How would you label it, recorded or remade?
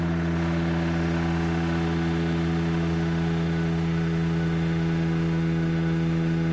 remade